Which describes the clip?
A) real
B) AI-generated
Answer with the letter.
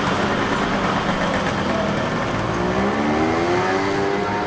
A